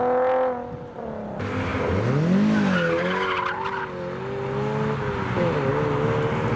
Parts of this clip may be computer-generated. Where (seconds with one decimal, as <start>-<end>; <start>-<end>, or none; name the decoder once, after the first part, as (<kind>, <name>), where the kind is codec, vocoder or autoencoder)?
none